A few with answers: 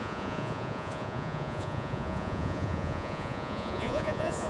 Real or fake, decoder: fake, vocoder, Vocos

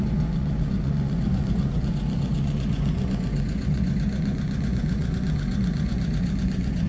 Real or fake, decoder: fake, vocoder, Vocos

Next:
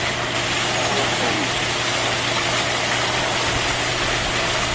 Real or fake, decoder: real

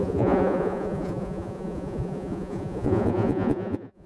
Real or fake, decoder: fake, vocoder, Vocos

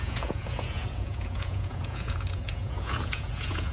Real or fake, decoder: fake, vocoder, Vocos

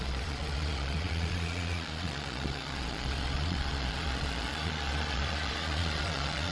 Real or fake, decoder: fake, vocoder, Vocos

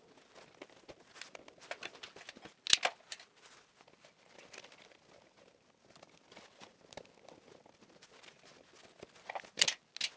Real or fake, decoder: real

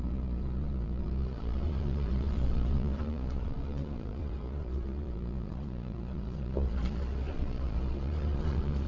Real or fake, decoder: fake, vocoder, Vocos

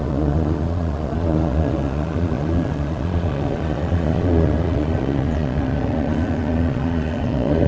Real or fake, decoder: fake, vocoder, Vocos